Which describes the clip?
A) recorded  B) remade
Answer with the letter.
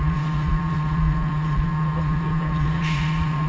B